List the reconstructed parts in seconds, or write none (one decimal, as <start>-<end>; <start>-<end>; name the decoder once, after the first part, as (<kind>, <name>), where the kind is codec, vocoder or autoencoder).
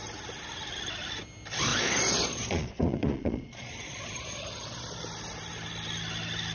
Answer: 1.7-5.0 (vocoder, Vocos)